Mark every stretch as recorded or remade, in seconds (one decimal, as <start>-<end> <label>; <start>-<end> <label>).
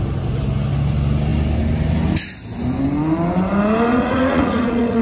0.0-3.9 recorded; 3.9-5.0 remade